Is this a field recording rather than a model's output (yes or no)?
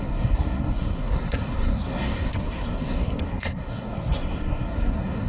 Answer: no